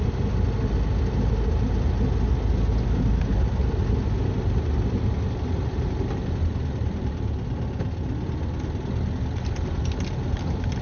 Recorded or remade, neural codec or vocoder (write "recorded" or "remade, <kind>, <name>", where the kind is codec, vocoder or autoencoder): recorded